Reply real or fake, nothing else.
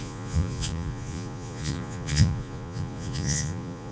fake